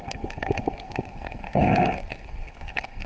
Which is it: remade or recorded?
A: remade